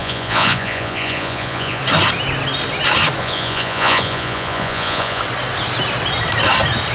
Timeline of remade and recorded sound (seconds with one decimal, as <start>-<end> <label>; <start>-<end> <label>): 0.0-1.8 remade; 1.8-3.2 recorded; 3.2-5.2 remade; 5.2-6.9 recorded